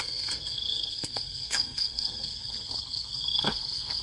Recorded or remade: remade